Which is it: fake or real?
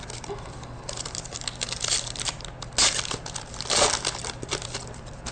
real